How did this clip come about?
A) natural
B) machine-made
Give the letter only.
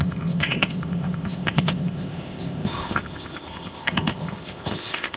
B